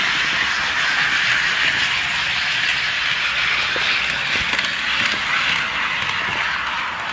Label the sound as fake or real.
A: real